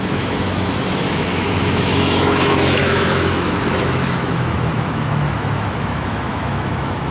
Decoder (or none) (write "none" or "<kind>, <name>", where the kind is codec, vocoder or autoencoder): autoencoder, DAC-VAE